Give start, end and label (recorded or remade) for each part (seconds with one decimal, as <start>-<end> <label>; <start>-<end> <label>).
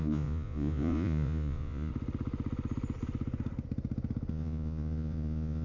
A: 0.0-1.9 remade; 1.9-4.3 recorded; 4.3-5.6 remade